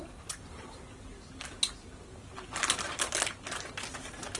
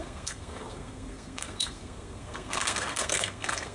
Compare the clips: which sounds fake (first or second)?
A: second